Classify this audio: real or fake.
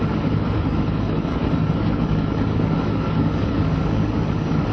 fake